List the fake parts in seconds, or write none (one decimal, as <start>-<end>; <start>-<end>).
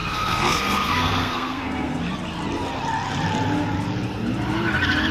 0.0-2.0